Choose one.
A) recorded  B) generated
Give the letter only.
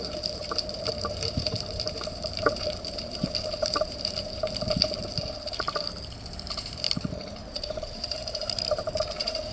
B